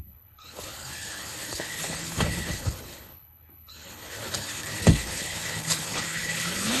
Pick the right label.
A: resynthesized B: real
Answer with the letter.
A